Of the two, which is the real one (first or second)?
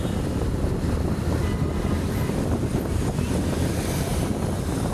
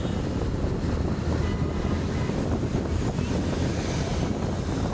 second